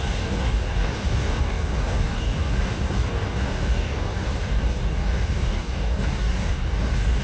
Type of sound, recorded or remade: remade